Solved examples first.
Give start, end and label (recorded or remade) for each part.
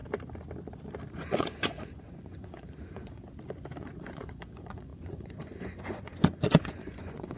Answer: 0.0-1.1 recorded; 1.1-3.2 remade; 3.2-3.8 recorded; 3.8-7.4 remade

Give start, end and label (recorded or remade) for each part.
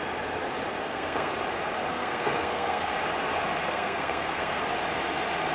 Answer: 0.0-0.8 recorded; 0.8-1.3 remade; 1.3-1.9 recorded; 1.9-2.9 remade; 2.9-3.6 recorded; 3.6-4.6 remade; 4.6-5.5 recorded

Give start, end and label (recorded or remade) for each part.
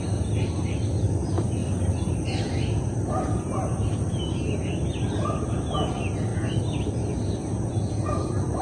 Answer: 0.0-8.6 recorded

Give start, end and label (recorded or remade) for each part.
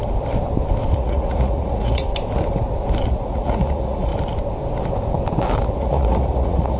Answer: 0.0-0.9 recorded; 0.9-2.1 remade; 2.1-3.1 recorded; 3.1-4.1 remade; 4.1-5.8 recorded; 5.8-6.8 remade